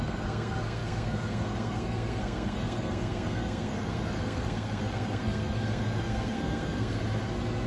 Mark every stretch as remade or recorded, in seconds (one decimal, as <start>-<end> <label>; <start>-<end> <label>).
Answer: 0.0-7.0 remade; 7.0-7.7 recorded